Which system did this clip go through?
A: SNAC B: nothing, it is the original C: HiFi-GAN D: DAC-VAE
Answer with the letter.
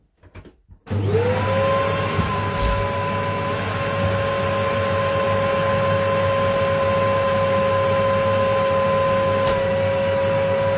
B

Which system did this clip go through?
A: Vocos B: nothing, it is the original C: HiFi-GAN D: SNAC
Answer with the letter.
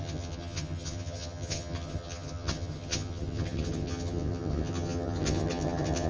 C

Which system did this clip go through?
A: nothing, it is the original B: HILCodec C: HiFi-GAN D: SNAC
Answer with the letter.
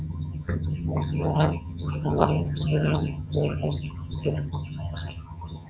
C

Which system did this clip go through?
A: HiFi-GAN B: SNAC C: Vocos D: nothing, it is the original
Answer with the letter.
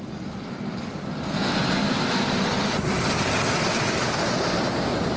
D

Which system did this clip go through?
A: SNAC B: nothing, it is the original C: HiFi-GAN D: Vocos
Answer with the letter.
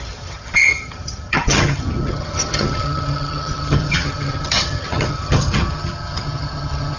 C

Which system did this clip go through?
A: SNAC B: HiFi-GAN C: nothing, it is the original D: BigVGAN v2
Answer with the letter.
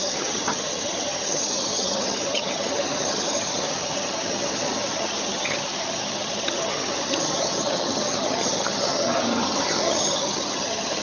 B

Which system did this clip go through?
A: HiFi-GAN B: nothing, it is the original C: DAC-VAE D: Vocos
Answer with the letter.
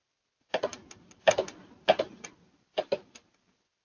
B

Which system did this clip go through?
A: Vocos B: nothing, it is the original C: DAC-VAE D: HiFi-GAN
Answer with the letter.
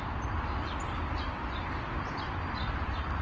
B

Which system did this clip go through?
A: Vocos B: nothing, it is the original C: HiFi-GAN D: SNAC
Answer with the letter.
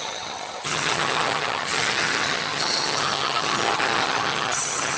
C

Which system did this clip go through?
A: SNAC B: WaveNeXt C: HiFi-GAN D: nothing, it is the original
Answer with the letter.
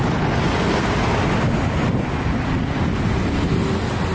D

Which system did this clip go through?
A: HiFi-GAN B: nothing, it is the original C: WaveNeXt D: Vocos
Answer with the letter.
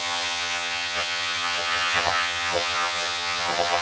A